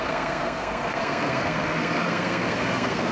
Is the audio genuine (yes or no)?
no